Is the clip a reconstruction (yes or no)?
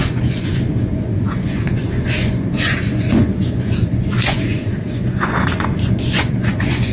yes